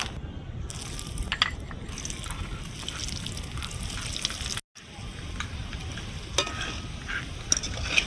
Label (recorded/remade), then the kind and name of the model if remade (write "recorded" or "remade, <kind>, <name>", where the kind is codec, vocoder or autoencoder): recorded